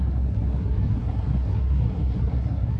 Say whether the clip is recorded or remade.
remade